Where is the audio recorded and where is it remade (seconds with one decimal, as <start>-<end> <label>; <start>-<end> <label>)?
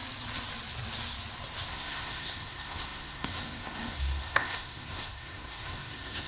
0.0-1.7 recorded; 1.7-6.3 remade